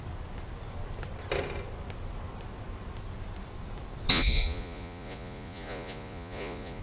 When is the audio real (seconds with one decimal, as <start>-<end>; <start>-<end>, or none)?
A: 0.0-4.1